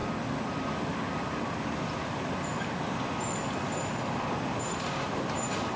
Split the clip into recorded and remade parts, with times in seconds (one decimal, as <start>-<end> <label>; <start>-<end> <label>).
0.0-5.8 recorded